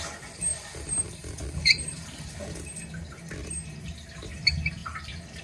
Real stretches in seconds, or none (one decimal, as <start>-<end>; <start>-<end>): 0.0-0.5; 2.3-4.8